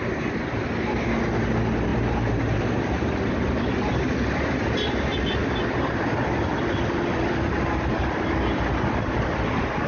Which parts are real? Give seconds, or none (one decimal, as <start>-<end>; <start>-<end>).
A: 0.0-9.9